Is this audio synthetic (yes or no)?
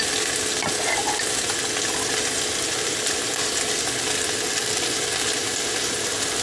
no